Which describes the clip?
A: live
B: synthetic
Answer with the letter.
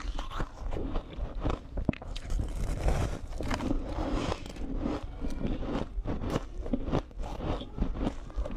B